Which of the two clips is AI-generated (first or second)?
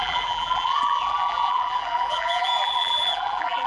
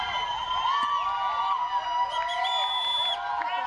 first